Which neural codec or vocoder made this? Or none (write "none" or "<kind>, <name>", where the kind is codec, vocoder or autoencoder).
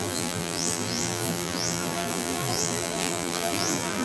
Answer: vocoder, BigVGAN v2